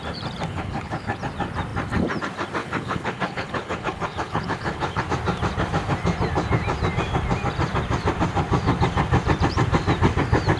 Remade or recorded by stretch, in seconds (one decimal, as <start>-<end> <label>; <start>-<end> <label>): 0.0-0.5 recorded; 0.5-1.2 remade; 1.2-2.6 recorded; 2.6-5.0 remade; 5.0-10.6 recorded